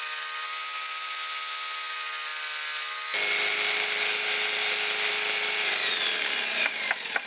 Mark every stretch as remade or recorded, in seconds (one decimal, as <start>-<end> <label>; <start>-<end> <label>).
0.0-7.3 recorded

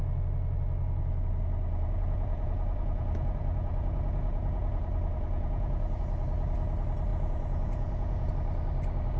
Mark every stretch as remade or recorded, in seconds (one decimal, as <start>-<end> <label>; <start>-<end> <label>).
0.0-1.7 recorded; 1.7-6.0 remade; 6.0-7.1 recorded; 7.1-8.3 remade; 8.3-9.2 recorded

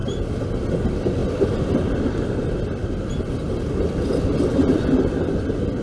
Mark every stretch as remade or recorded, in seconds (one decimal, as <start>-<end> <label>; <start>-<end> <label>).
0.0-5.8 recorded

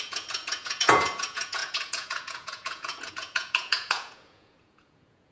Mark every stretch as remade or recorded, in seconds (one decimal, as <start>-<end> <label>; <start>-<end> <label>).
0.0-5.3 remade

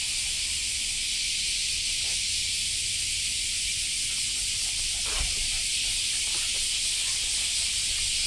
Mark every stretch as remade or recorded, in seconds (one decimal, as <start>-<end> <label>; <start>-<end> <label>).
0.0-0.6 recorded; 0.6-2.9 remade; 2.9-3.3 recorded; 3.3-4.1 remade; 4.1-8.3 recorded